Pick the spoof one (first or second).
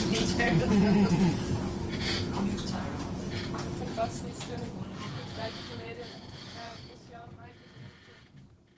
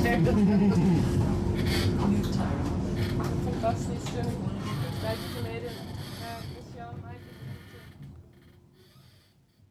first